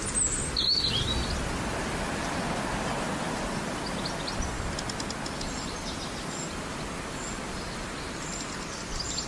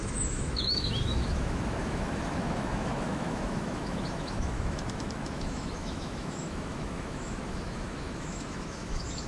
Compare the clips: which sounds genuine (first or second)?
first